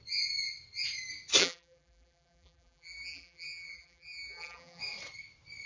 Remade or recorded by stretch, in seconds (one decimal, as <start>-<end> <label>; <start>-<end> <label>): 0.0-1.4 recorded; 1.4-4.8 remade; 4.8-5.7 recorded